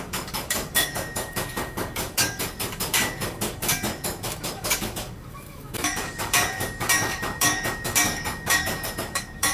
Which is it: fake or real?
fake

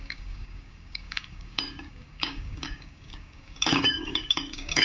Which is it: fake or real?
fake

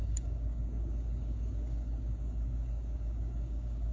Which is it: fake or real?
fake